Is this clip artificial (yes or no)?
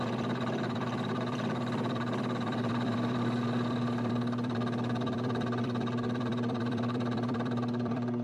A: yes